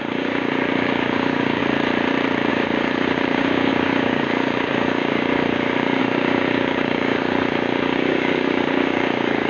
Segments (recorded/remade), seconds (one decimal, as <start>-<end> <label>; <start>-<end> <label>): 0.0-1.6 remade; 1.6-2.5 recorded; 2.5-9.5 remade